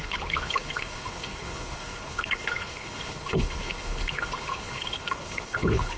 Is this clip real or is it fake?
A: fake